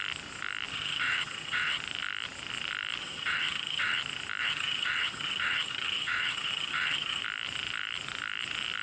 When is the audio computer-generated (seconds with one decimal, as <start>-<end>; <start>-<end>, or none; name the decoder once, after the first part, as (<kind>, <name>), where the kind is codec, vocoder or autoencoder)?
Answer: 0.7-1.8 (vocoder, HiFi-GAN); 3.0-4.0; 4.4-7.2